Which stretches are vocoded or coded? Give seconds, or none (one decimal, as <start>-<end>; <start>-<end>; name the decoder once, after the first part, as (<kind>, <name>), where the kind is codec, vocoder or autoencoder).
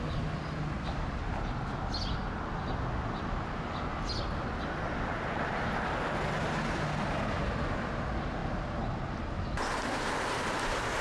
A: none